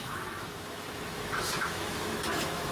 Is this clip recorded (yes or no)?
no